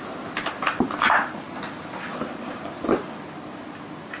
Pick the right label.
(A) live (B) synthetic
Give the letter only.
A